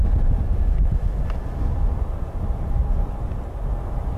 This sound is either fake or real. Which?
real